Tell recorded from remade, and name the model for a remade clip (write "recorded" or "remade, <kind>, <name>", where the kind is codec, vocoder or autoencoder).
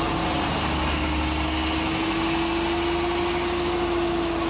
recorded